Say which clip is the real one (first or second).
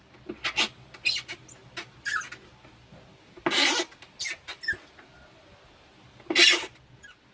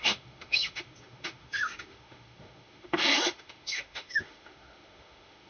first